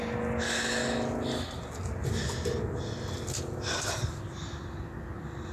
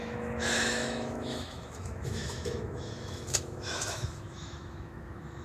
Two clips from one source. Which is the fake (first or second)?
second